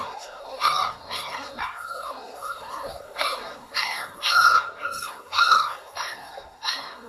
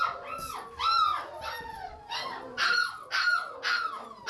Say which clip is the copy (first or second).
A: first